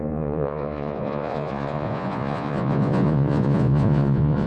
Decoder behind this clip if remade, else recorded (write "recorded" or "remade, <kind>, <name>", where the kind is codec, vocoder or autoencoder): remade, vocoder, Vocos